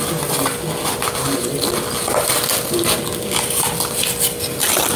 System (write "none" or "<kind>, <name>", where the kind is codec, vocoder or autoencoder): none